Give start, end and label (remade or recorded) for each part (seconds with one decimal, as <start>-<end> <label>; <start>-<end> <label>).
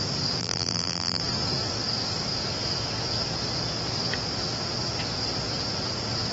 0.0-0.4 recorded; 0.4-1.2 remade; 1.2-6.3 recorded